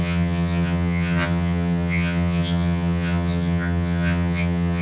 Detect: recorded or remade remade